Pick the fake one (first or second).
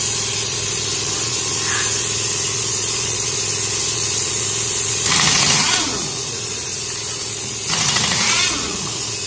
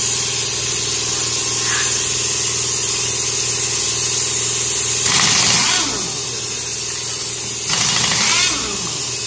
first